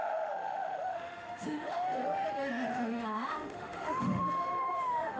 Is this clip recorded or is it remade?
remade